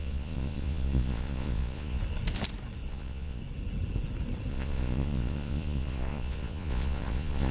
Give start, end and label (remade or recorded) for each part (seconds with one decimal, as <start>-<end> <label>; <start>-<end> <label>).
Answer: 0.0-2.0 remade; 2.0-2.9 recorded; 2.9-3.4 remade; 3.4-4.5 recorded; 4.5-7.5 remade